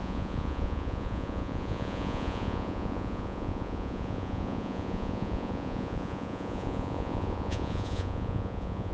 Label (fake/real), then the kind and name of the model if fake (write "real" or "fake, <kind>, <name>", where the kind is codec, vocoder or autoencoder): fake, vocoder, Vocos